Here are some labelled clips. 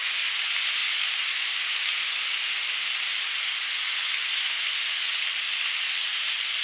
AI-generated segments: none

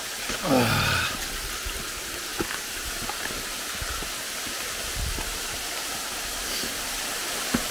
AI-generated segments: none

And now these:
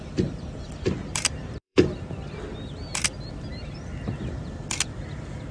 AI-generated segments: 1.0-1.9

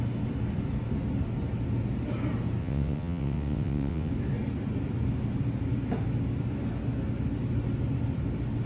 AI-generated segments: 2.6-4.1

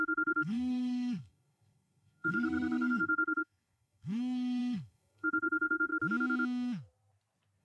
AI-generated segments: 0.0-5.9

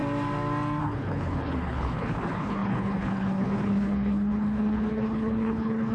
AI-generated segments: 0.8-5.9

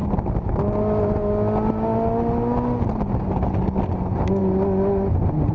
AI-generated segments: none